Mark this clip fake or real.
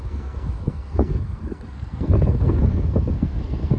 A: fake